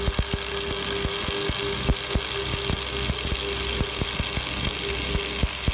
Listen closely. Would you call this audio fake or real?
real